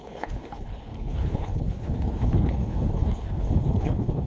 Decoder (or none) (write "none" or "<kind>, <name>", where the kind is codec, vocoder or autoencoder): codec, HILCodec